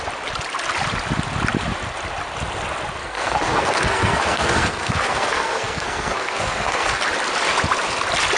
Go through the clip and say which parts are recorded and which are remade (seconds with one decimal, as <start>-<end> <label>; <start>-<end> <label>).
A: 0.0-3.0 recorded; 3.0-7.0 remade; 7.0-8.4 recorded